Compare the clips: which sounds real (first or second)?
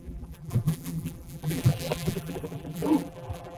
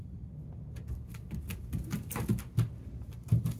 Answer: second